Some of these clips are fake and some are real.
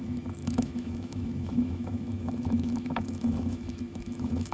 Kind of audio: fake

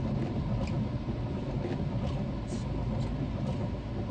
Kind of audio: real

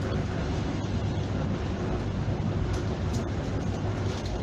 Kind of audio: real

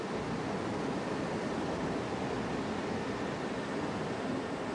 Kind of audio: real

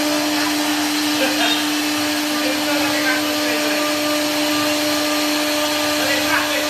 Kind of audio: real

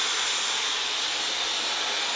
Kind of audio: real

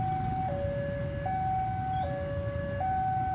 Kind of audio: real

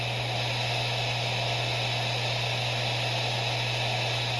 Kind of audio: real